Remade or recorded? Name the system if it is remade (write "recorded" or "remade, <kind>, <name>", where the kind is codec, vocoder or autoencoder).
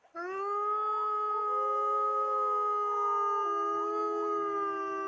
recorded